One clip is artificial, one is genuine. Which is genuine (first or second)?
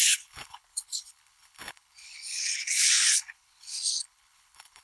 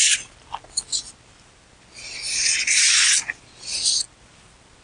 second